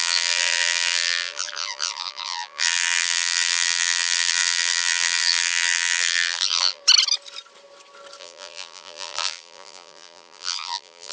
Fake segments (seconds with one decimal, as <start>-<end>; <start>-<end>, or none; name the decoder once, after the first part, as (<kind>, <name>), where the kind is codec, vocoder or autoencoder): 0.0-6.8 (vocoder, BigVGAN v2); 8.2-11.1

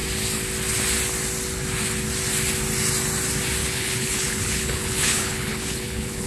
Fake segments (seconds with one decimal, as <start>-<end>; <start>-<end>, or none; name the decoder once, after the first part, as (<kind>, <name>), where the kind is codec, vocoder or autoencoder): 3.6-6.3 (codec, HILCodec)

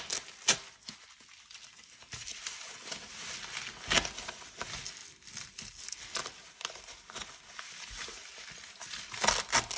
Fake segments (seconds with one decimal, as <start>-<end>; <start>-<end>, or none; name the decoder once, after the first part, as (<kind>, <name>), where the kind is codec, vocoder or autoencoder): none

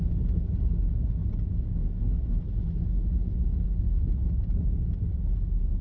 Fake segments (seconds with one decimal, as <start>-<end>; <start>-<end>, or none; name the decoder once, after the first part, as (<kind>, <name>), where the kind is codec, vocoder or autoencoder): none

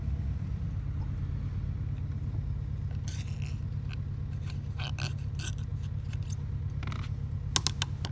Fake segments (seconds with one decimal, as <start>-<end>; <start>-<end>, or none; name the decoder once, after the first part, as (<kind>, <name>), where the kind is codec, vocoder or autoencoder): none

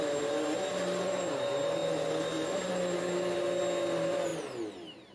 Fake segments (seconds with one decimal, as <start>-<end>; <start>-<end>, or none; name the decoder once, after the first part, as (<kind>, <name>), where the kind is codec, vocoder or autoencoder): none

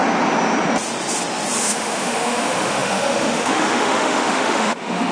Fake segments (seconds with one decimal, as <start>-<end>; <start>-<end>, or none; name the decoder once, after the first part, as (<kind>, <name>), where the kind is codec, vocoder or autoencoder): 1.6-5.1 (autoencoder, DAC-VAE)